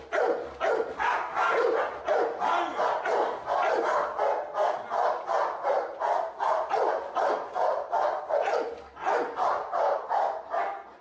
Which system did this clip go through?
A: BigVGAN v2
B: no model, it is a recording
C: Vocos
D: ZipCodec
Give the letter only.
B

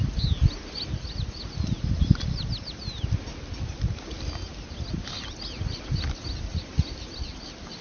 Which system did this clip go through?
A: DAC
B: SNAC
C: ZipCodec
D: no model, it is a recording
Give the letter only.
D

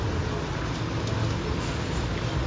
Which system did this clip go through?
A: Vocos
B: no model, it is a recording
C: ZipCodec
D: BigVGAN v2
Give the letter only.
B